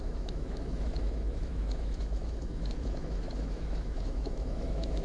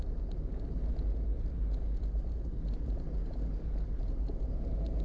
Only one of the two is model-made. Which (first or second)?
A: first